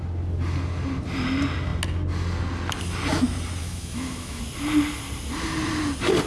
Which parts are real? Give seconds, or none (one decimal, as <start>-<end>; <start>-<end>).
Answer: 0.0-3.6; 4.4-6.3